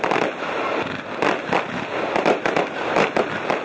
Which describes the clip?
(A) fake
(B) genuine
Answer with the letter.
B